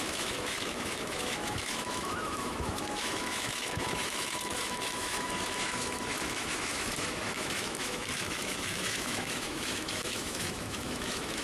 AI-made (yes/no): yes